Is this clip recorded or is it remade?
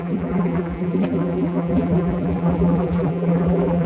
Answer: remade